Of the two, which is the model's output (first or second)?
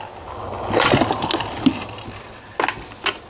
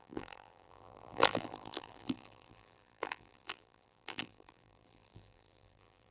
second